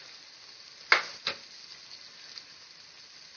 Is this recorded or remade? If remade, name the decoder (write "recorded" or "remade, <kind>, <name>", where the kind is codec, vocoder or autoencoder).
recorded